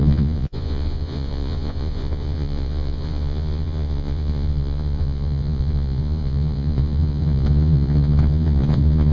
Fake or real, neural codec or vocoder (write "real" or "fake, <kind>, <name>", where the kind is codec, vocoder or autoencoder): fake, vocoder, Vocos